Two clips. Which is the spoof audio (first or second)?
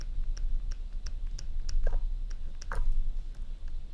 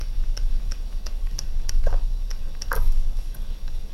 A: second